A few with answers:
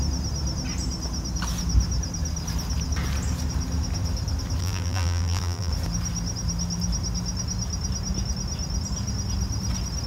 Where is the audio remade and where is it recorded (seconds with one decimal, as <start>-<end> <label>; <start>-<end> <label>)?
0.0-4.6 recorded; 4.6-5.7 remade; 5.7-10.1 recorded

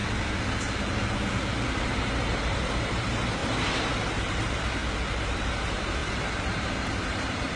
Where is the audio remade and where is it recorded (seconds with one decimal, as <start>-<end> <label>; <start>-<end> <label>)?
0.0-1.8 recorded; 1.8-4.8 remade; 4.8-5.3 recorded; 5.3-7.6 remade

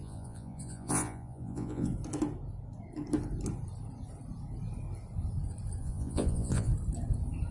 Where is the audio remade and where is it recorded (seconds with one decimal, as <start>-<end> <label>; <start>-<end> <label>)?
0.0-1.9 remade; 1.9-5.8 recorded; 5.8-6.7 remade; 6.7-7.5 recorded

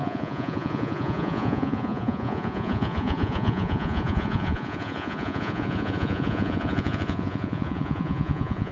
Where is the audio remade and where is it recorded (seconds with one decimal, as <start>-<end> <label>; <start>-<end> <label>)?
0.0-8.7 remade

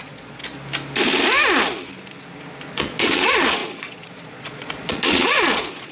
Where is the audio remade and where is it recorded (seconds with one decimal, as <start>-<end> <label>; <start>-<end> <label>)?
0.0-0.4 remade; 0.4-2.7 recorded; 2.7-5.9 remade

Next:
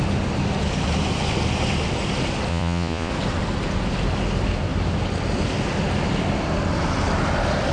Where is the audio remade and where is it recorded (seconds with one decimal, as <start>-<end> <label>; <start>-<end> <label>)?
0.0-2.5 recorded; 2.5-3.1 remade; 3.1-7.7 recorded

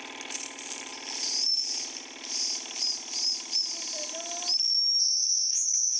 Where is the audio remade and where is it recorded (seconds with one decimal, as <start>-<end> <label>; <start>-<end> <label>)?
0.0-5.0 recorded; 5.0-6.0 remade